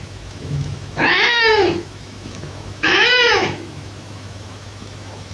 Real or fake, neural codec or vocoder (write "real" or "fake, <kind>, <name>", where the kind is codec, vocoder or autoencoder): fake, autoencoder, DAC-VAE